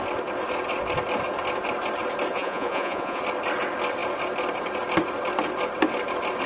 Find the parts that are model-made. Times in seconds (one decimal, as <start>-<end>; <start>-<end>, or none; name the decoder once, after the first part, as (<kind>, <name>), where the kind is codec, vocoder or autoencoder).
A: 2.3-3.2 (vocoder, Vocos)